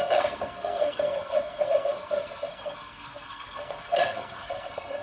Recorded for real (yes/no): no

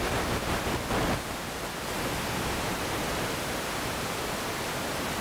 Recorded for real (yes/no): yes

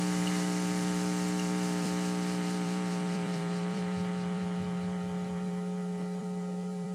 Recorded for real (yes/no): no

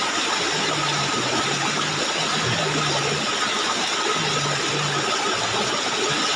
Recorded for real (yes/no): yes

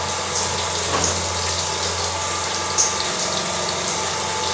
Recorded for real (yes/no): yes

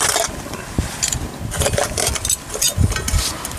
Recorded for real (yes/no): yes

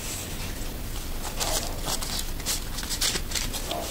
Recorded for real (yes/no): yes